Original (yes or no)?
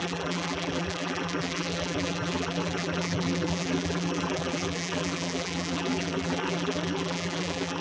no